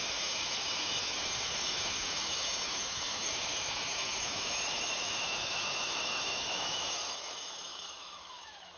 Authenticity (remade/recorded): remade